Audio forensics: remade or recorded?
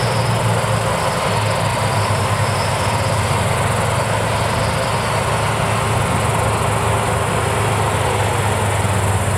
recorded